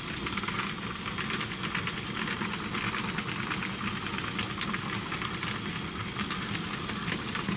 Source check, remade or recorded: recorded